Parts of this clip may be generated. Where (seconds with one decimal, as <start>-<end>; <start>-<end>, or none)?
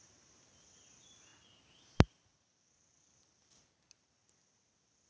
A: none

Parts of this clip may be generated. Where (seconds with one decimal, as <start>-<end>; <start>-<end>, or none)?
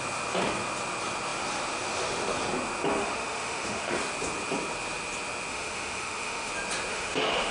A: 3.0-3.9; 5.5-6.5; 6.9-7.5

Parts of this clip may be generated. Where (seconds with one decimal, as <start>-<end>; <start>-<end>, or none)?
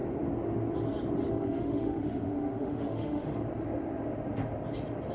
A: 1.3-3.4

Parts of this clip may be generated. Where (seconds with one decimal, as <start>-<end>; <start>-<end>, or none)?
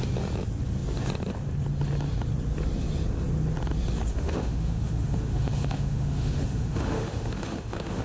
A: 4.1-8.0